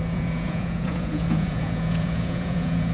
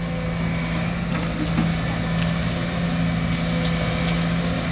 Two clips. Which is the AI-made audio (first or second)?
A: first